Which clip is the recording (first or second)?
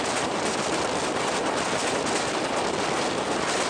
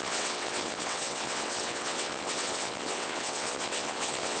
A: first